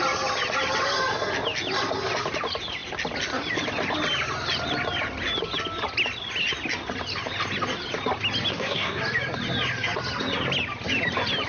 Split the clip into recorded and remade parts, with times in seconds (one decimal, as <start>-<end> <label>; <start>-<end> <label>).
0.0-8.5 recorded; 8.5-9.0 remade; 9.0-11.5 recorded

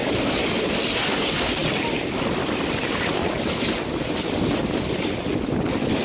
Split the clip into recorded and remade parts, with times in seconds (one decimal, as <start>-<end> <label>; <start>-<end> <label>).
0.0-6.0 recorded

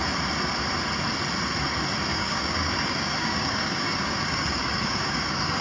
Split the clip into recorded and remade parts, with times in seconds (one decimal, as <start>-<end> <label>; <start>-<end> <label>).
0.0-2.1 recorded; 2.1-5.6 remade

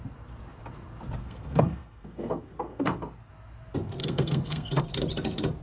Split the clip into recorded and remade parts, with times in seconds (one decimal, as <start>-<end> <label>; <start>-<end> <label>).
0.0-1.2 recorded; 1.2-3.3 remade; 3.3-4.0 recorded; 4.0-4.8 remade; 4.8-5.6 recorded

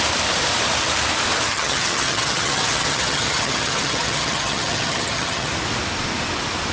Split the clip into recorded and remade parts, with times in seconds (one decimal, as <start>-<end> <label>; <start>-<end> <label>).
0.0-1.5 recorded; 1.5-5.5 remade; 5.5-6.7 recorded

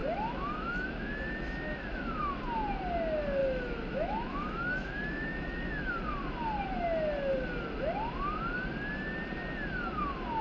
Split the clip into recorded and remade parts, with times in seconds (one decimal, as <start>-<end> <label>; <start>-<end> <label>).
0.0-2.4 remade; 2.4-3.4 recorded; 3.4-5.9 remade; 5.9-10.4 recorded

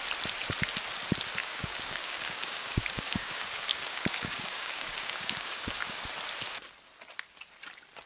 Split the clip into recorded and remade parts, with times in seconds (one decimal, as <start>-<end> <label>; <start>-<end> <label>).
0.0-1.4 recorded; 1.4-6.0 remade; 6.0-8.1 recorded